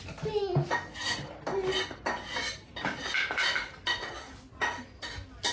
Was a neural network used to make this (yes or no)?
no